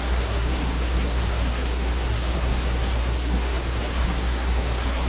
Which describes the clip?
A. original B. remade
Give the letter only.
B